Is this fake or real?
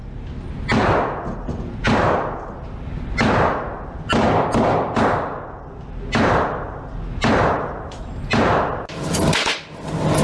real